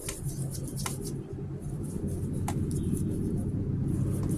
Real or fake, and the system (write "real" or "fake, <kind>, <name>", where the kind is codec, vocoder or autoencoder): real